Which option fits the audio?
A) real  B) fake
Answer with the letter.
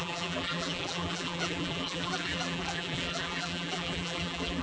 B